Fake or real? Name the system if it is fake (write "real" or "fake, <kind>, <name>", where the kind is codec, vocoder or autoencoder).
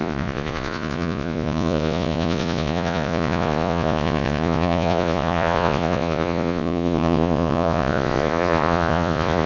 fake, vocoder, Vocos